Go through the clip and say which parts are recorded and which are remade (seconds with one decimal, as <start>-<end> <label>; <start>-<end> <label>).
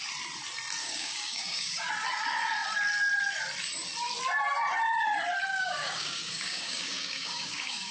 0.0-0.8 recorded; 0.8-1.9 remade; 1.9-5.5 recorded; 5.5-7.9 remade